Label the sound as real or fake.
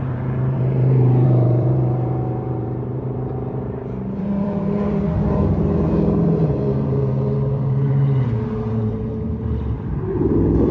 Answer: fake